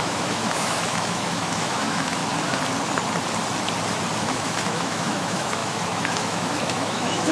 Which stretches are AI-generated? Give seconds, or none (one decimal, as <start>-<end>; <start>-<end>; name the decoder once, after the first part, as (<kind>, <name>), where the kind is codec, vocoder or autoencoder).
0.0-2.2 (autoencoder, DAC-VAE); 4.2-7.3